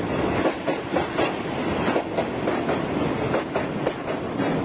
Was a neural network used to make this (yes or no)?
no